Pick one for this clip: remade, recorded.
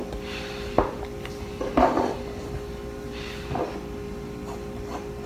recorded